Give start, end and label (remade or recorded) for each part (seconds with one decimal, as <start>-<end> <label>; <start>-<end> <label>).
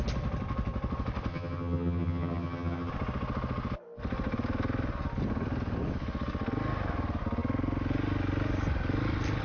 0.0-1.3 recorded; 1.3-2.9 remade; 2.9-9.4 recorded